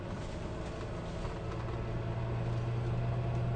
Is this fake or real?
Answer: real